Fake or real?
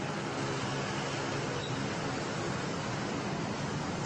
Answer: real